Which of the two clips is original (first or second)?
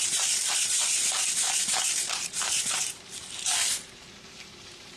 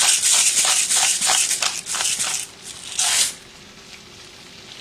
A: second